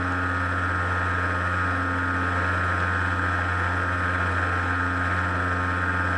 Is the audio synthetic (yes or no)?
no